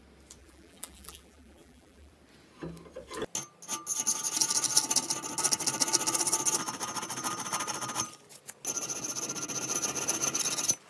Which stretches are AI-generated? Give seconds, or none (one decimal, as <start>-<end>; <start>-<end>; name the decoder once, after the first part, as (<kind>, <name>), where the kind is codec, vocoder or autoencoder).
0.4-2.1 (vocoder, BigVGAN v2)